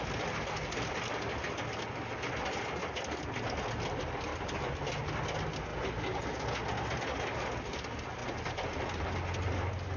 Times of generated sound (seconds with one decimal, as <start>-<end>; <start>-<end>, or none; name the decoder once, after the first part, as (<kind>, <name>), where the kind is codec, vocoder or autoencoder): none